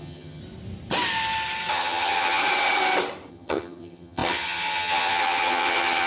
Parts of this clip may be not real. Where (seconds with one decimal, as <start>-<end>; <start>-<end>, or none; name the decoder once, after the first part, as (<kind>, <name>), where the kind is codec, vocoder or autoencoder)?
0.0-0.4 (vocoder, HiFi-GAN); 1.7-2.4; 3.3-6.1